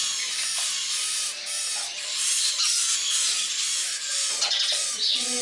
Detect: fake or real real